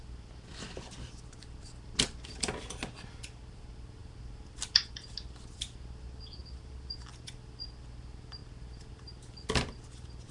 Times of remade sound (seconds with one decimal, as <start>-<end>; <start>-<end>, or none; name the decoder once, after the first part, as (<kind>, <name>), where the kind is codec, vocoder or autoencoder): 6.4-7.3 (vocoder, BigVGAN v2)